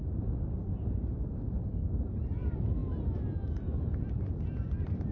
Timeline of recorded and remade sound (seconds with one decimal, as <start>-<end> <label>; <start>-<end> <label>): 0.0-5.1 recorded